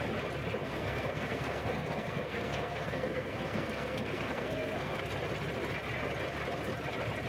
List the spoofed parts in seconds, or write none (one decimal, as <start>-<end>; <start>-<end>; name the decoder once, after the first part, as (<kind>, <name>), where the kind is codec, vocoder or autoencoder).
0.6-5.0 (codec, SNAC)